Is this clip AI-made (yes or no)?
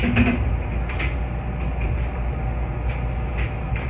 no